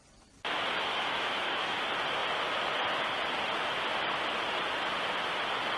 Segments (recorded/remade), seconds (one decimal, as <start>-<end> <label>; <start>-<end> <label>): 0.0-0.9 recorded; 0.9-1.8 remade; 1.8-5.8 recorded